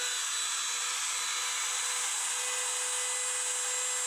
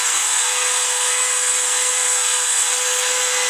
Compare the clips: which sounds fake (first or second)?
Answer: second